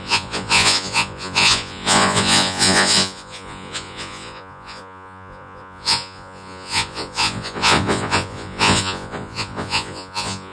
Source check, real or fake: fake